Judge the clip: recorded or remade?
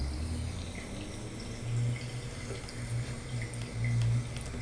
recorded